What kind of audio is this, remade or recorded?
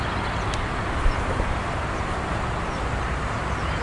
recorded